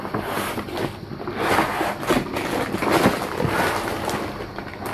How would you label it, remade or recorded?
recorded